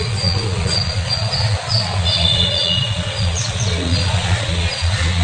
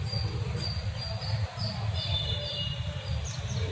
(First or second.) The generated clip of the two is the first